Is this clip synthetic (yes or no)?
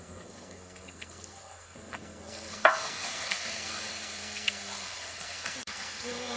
yes